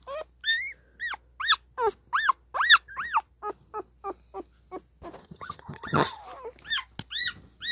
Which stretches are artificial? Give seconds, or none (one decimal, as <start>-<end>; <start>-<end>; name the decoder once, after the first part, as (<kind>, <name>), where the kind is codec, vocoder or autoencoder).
5.2-6.2 (vocoder, HiFi-GAN)